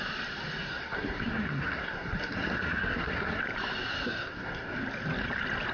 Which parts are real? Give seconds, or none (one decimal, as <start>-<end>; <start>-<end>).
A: 0.0-0.6; 3.4-3.9; 4.8-5.7